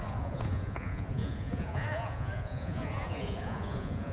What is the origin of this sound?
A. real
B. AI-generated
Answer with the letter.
B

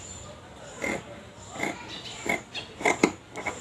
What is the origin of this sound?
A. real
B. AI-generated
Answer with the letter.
A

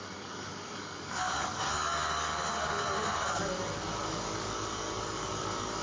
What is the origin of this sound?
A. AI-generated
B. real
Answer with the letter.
A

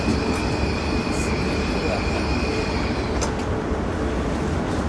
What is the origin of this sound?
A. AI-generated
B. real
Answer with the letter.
B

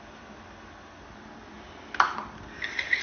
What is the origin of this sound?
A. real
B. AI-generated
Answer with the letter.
A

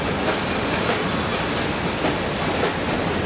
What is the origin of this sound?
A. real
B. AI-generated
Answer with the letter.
A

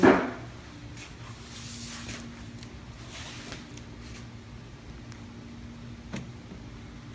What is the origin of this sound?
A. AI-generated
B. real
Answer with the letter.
B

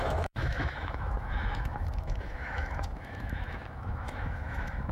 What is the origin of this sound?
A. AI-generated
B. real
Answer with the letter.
A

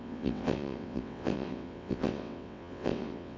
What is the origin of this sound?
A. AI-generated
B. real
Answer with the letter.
A